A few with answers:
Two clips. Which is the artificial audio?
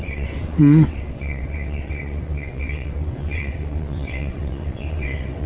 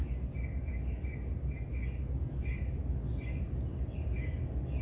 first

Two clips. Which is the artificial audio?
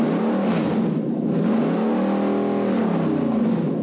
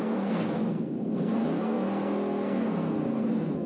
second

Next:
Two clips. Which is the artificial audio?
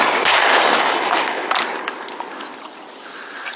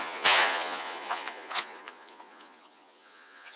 second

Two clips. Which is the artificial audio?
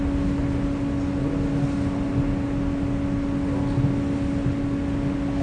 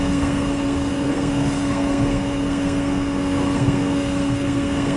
second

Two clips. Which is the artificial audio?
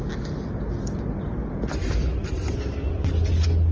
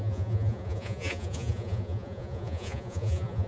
second